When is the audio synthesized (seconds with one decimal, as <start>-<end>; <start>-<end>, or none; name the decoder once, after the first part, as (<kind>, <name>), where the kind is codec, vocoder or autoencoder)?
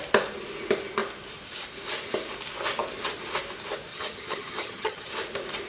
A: 3.9-5.1 (vocoder, HiFi-GAN)